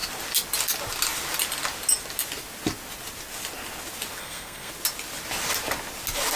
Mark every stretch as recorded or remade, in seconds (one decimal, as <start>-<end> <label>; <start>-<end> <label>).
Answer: 0.0-4.2 recorded; 4.2-4.7 remade; 4.7-6.4 recorded